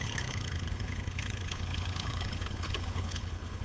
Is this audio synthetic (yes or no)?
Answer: yes